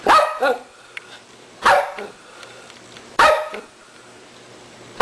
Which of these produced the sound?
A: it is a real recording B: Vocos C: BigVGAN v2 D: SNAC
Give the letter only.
A